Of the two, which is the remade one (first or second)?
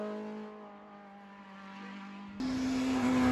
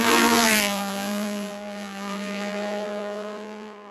second